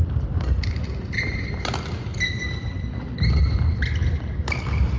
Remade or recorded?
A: recorded